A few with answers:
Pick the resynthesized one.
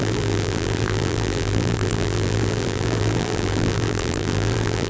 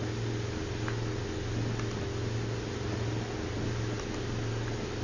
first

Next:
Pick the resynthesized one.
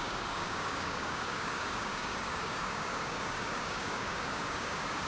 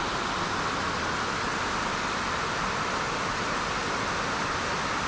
first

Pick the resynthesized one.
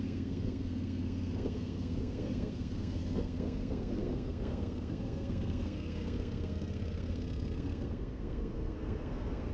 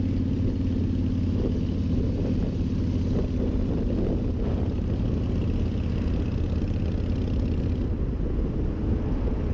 first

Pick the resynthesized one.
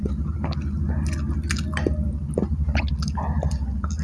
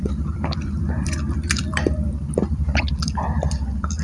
second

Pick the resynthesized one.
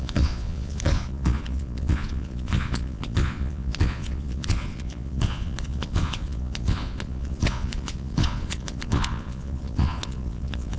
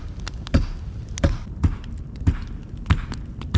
first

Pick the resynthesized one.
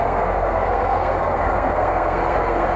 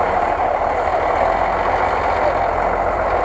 first